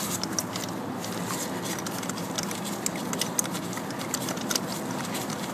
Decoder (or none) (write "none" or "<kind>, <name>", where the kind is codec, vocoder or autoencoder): none